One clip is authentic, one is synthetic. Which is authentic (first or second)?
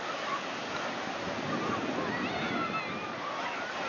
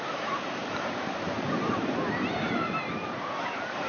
first